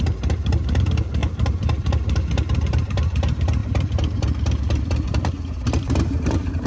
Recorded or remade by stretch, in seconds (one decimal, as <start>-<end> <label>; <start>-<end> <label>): 0.0-6.7 remade